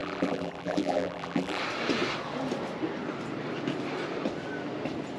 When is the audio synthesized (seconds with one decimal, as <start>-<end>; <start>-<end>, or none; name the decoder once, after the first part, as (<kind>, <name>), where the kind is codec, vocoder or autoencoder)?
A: 0.0-1.6 (vocoder, BigVGAN v2)